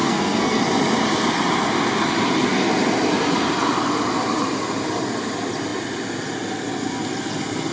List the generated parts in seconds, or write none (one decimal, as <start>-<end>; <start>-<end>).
0.0-0.6